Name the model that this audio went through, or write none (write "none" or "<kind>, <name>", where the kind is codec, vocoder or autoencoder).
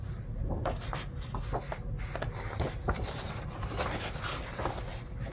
none